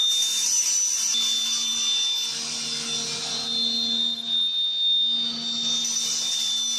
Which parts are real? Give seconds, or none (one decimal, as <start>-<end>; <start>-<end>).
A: 0.0-6.8